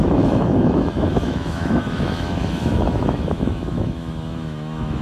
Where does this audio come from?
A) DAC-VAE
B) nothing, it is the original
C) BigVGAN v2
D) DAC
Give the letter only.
A